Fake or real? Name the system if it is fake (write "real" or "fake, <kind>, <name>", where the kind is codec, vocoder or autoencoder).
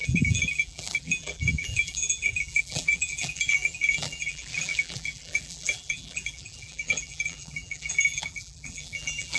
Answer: fake, vocoder, BigVGAN v2